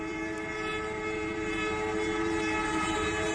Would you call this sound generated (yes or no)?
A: yes